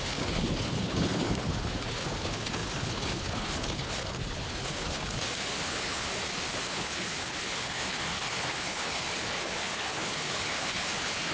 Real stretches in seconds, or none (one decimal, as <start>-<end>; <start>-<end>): none